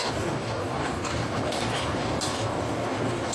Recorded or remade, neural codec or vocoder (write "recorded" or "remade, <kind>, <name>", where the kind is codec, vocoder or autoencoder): remade, codec, DAC